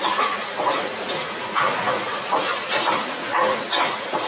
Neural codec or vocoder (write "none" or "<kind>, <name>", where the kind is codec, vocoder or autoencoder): vocoder, Vocos